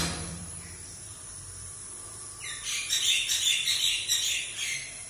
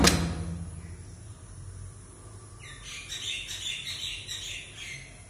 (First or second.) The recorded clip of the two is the second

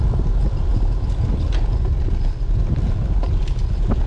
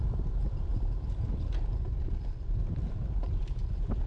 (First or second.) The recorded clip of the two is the first